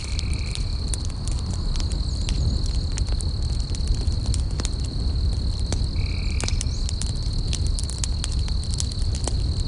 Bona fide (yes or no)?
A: yes